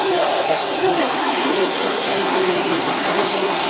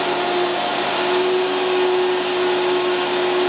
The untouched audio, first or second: second